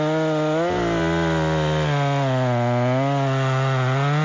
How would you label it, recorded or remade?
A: recorded